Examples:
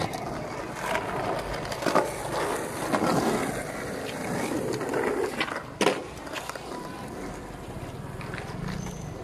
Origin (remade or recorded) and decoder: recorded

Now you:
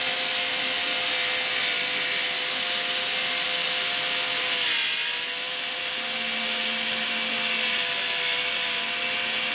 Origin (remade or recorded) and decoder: recorded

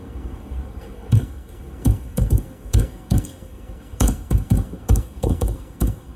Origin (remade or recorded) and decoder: remade, codec, SNAC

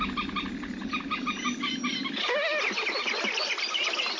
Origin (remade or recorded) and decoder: recorded